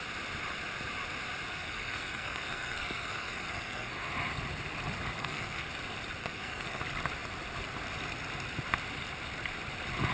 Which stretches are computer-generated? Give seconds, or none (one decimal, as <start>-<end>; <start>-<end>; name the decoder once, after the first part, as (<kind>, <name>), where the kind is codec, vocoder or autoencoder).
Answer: 1.5-4.1 (codec, SNAC); 5.2-5.7; 6.2-6.8